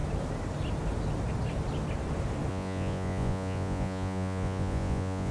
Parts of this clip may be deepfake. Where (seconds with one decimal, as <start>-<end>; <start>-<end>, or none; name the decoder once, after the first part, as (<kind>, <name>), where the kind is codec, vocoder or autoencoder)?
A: 2.5-5.3 (vocoder, Vocos)